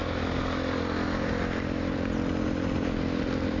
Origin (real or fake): real